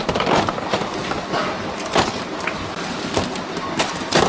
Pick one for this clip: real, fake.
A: real